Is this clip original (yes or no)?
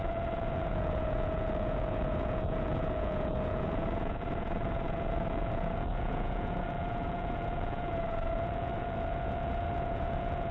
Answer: no